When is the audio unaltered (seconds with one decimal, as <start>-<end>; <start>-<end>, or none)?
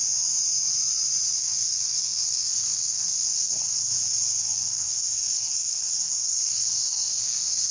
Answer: 0.0-1.4; 3.9-4.4